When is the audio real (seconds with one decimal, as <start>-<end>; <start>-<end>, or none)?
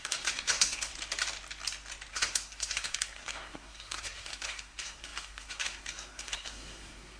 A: 0.9-2.1